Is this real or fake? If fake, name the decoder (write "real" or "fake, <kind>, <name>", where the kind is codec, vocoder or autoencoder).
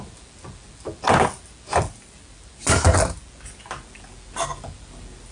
real